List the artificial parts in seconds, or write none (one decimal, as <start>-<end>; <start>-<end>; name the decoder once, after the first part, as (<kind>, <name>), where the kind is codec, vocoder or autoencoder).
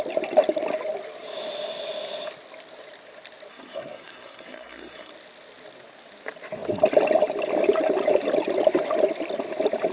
3.5-5.1 (codec, SNAC)